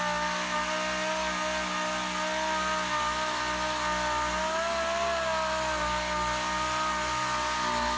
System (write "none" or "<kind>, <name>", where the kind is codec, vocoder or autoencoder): none